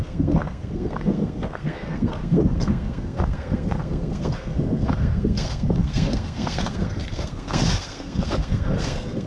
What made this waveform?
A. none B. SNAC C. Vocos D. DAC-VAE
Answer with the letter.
B